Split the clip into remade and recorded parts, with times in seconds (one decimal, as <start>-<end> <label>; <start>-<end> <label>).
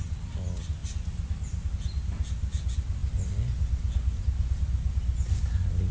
0.0-5.9 recorded